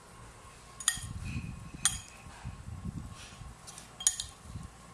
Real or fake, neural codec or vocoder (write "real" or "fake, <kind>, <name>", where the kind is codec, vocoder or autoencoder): real